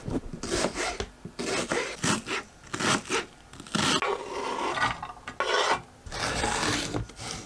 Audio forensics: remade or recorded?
recorded